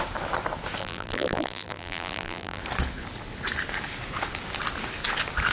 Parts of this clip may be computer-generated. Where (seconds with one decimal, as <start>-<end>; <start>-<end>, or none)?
0.8-2.6